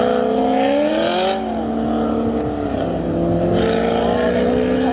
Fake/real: real